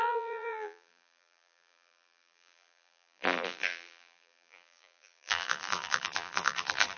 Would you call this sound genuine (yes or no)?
no